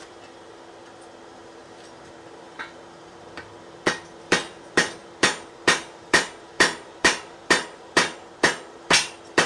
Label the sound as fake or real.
fake